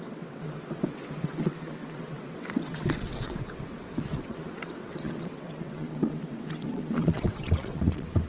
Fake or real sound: fake